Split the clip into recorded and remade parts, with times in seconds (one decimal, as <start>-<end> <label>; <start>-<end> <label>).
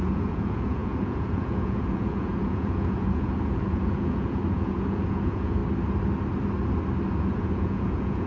0.0-5.6 remade; 5.6-7.1 recorded; 7.1-8.3 remade